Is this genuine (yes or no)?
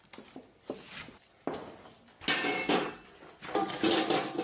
yes